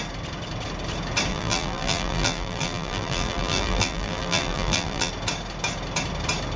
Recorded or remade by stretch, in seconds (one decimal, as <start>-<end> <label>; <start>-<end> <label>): 0.0-1.3 recorded; 1.3-5.1 remade; 5.1-6.6 recorded